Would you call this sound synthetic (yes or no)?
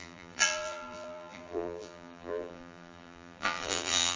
yes